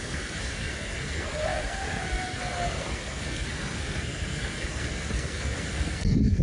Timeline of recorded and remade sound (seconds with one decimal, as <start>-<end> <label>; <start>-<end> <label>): 0.0-6.4 remade